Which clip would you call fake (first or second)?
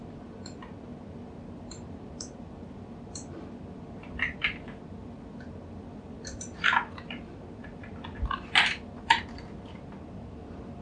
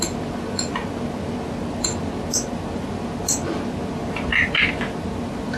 first